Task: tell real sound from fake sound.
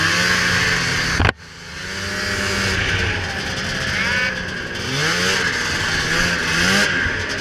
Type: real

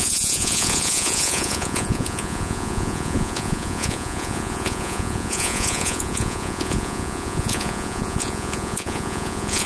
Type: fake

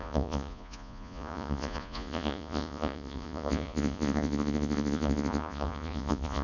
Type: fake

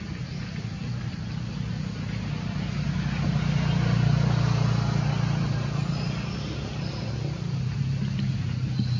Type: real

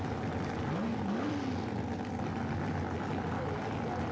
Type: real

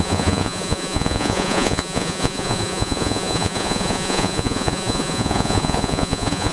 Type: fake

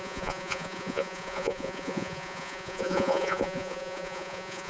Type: fake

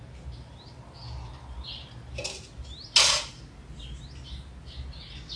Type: real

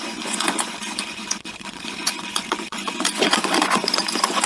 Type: fake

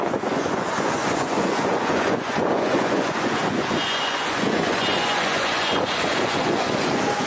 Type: fake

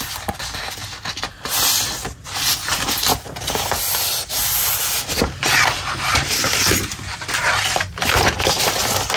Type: real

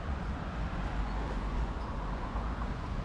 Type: fake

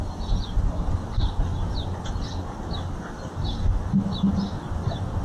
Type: real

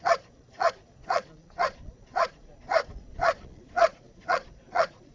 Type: fake